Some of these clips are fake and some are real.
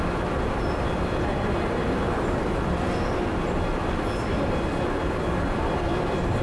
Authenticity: fake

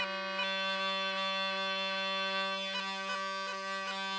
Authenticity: real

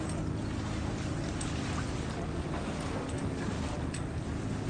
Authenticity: real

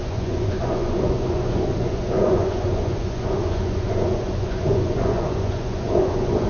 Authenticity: fake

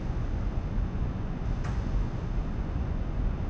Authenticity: fake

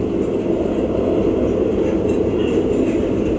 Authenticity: real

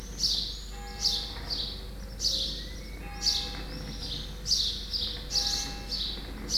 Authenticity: real